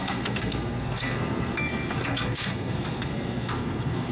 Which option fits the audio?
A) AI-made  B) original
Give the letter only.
A